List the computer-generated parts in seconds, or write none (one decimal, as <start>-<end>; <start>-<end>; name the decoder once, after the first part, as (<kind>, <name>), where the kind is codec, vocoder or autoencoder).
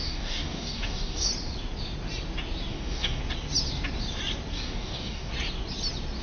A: 0.0-1.3 (codec, DAC); 2.7-3.2; 4.5-5.3